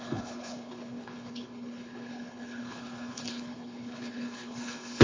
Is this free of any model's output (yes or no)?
no